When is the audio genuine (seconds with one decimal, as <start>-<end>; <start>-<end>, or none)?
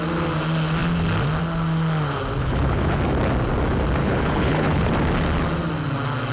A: 0.0-2.4; 3.0-4.0; 4.9-6.3